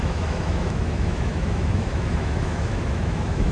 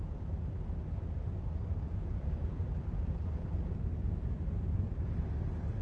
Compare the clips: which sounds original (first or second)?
second